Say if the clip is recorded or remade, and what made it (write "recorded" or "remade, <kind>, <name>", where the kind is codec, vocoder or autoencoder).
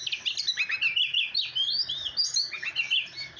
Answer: recorded